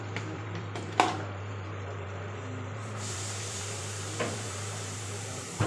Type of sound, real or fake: fake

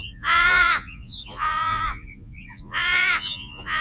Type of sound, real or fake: fake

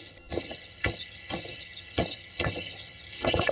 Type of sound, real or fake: fake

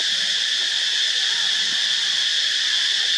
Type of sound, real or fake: real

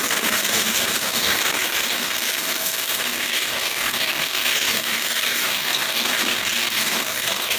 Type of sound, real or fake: fake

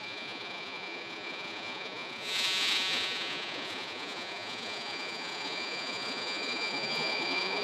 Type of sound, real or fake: fake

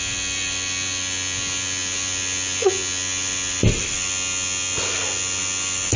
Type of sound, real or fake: real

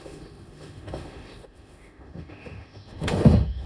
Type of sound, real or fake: fake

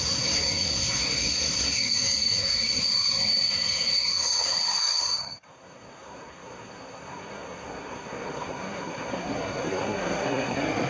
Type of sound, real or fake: fake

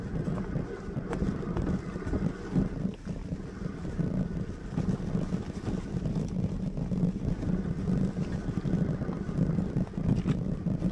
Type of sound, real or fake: real